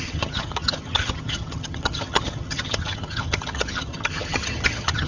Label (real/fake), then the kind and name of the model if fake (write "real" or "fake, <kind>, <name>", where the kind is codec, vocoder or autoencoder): fake, vocoder, HiFi-GAN